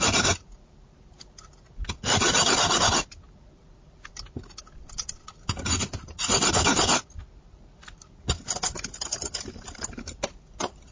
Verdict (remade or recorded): recorded